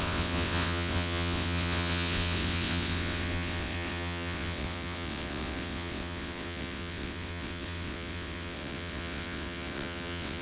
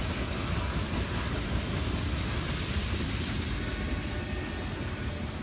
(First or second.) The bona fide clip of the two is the second